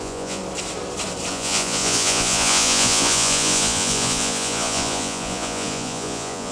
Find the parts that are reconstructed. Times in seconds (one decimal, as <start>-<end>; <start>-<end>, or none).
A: 0.0-0.4; 1.3-6.5